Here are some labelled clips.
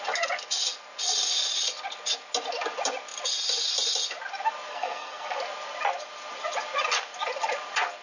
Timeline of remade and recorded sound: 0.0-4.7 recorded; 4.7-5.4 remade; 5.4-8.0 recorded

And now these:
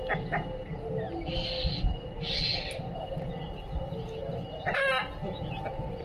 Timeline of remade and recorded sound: 0.0-6.0 recorded

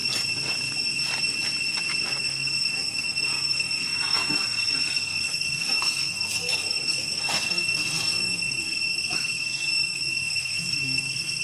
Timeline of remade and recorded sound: 0.0-2.1 recorded; 2.1-11.4 remade

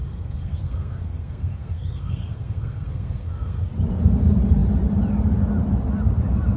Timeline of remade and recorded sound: 0.0-3.7 remade; 3.7-6.6 recorded

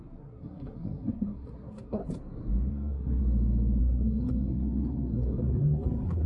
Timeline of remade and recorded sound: 0.0-2.0 remade; 2.0-2.7 recorded; 2.7-3.2 remade; 3.2-3.8 recorded; 3.8-6.3 remade

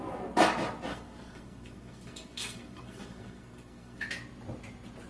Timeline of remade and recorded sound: 0.0-0.9 recorded; 0.9-4.0 remade; 4.0-5.1 recorded

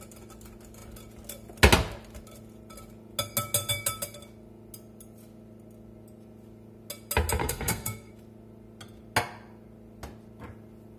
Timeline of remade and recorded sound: 0.0-7.4 recorded; 7.4-8.1 remade; 8.1-11.0 recorded